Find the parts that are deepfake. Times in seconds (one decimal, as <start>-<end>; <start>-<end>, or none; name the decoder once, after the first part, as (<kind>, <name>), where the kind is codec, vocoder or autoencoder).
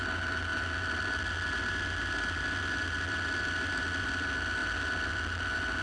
none